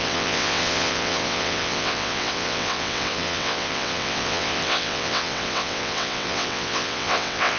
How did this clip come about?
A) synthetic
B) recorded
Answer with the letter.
A